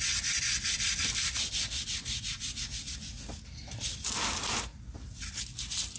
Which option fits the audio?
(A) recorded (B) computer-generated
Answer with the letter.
A